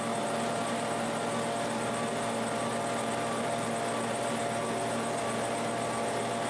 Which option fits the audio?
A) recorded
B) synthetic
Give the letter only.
A